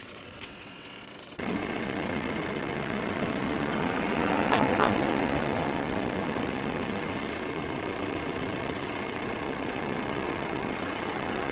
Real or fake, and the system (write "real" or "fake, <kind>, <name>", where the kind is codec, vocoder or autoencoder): fake, vocoder, WaveNeXt